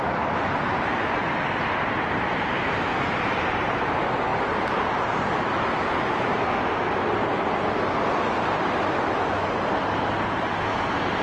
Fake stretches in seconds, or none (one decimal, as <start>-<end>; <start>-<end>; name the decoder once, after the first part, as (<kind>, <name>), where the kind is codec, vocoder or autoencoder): 2.9-3.8 (vocoder, BigVGAN v2); 4.3-5.3

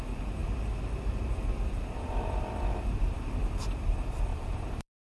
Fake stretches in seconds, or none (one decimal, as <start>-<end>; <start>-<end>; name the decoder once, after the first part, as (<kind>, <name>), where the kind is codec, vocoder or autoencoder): 0.4-3.5 (vocoder, BigVGAN v2); 4.3-5.1

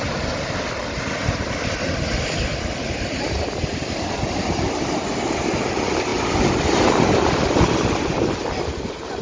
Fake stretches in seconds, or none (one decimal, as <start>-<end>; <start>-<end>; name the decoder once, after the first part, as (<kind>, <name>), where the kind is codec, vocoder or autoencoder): none

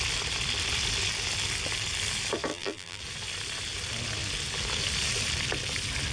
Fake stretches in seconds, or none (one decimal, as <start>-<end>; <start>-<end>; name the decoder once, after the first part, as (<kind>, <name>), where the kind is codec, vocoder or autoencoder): 2.5-3.0 (vocoder, BigVGAN v2)

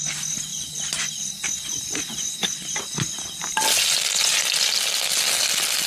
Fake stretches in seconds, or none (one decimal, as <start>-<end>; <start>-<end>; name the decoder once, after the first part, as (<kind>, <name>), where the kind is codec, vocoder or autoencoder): 0.5-1.2 (vocoder, BigVGAN v2)

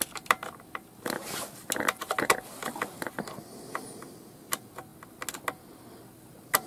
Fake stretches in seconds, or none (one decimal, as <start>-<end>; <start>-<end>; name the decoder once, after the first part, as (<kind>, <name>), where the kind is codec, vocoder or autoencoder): none

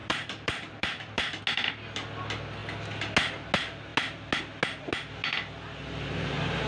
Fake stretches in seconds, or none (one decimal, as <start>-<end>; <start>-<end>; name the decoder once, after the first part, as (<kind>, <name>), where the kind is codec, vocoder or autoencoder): 0.0-1.4 (vocoder, BigVGAN v2)